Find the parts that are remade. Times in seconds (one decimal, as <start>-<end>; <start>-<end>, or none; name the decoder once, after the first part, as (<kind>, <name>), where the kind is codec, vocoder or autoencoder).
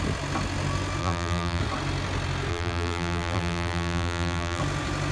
1.0-1.6 (vocoder, BigVGAN v2); 2.5-4.6